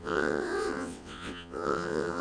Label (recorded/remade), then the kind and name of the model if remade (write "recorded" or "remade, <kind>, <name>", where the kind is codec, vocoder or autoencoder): remade, vocoder, WaveNeXt